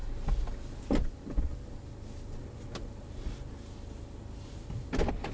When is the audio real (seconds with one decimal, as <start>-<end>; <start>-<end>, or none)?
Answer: 0.0-5.3